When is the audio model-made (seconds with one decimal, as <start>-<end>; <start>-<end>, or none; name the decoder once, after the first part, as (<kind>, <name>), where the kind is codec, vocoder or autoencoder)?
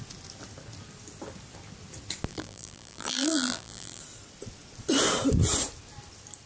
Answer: 2.3-4.0 (vocoder, BigVGAN v2)